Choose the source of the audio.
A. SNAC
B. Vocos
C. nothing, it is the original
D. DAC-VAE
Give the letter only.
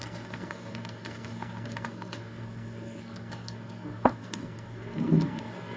A